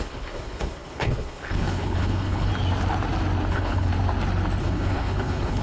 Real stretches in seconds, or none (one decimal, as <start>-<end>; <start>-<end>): 2.5-3.5; 3.9-4.6